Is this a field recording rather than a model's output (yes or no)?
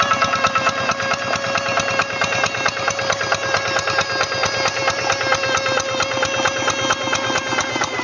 yes